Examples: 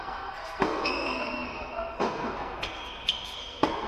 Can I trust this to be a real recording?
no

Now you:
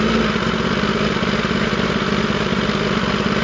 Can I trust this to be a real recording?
yes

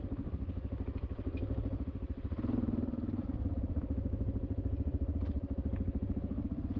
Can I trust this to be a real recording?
yes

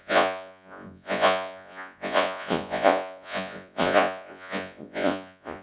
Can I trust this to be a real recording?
no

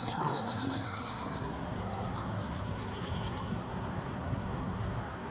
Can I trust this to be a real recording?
no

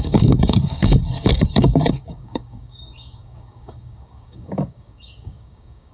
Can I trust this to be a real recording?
no